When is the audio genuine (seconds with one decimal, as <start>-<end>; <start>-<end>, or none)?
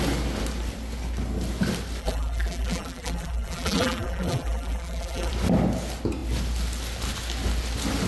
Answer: 0.0-2.0; 5.3-8.1